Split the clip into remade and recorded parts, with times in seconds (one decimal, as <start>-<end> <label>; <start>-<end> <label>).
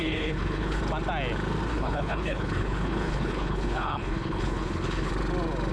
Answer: 0.0-0.8 remade; 0.8-1.7 recorded; 1.7-5.1 remade; 5.1-5.7 recorded